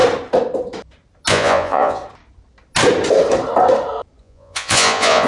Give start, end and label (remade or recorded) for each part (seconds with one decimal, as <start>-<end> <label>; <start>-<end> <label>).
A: 0.0-1.3 recorded; 1.3-2.0 remade; 2.0-4.2 recorded; 4.2-5.3 remade

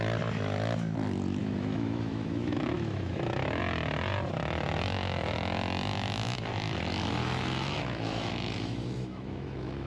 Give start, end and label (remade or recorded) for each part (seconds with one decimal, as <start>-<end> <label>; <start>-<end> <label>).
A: 0.0-1.4 recorded; 1.4-3.6 remade; 3.6-7.2 recorded; 7.2-9.9 remade